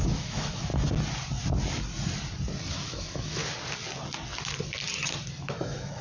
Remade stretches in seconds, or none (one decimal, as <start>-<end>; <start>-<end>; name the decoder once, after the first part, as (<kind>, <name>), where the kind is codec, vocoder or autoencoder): 0.0-0.7 (autoencoder, DAC-VAE); 2.7-3.4; 5.4-6.0